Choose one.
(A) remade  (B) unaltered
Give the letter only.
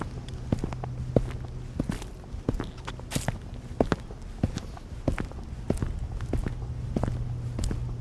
B